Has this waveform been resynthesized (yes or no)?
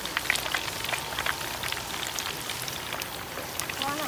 no